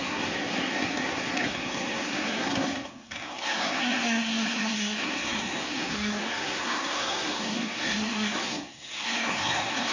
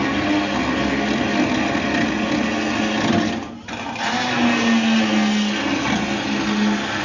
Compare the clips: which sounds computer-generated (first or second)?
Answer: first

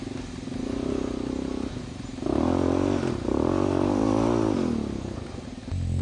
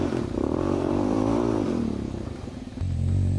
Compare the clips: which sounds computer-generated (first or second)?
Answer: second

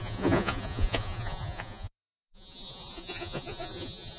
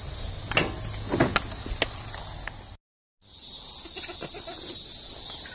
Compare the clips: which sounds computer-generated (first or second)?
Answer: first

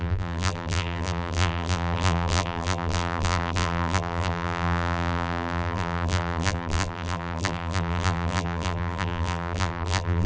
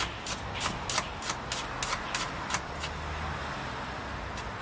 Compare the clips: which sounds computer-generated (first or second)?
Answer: first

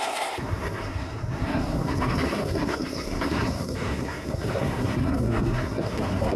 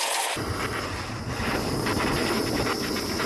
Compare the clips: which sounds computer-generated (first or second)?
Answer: first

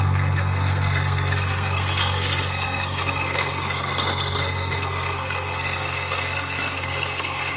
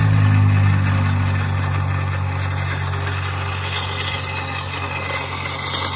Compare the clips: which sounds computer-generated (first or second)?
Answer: first